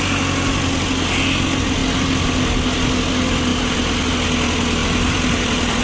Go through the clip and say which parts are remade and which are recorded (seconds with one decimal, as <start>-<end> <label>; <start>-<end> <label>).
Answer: 0.0-3.5 recorded; 3.5-4.1 remade; 4.1-4.8 recorded; 4.8-5.8 remade